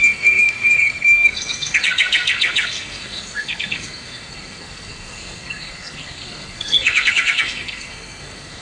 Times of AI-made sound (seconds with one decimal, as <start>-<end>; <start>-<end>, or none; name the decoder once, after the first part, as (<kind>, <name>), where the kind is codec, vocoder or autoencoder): 0.0-8.6 (codec, SNAC)